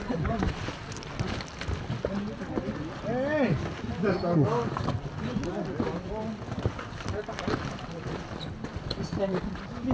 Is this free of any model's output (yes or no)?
yes